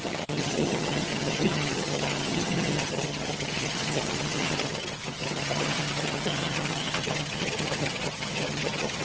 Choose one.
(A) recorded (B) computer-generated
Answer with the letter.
B